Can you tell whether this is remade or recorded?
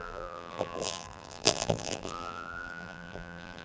remade